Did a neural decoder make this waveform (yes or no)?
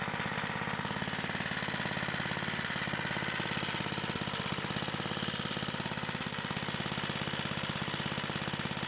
no